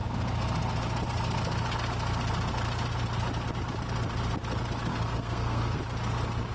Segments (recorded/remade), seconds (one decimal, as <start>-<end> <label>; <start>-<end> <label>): 0.0-4.9 recorded; 4.9-5.8 remade; 5.8-6.5 recorded